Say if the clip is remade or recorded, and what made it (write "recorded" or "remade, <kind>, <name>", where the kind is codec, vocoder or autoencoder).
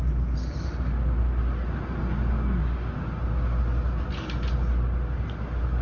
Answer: recorded